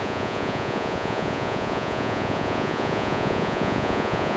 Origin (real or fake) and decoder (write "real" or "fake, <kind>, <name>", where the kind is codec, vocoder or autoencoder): fake, vocoder, Vocos